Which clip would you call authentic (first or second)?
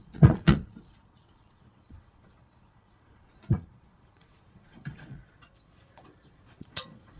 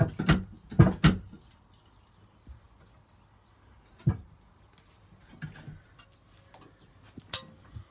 second